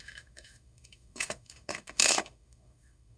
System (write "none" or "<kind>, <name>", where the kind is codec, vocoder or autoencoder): autoencoder, DAC-VAE